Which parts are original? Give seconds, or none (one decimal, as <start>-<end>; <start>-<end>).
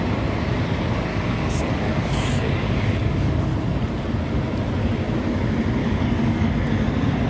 0.0-1.1; 3.4-5.8; 6.5-7.3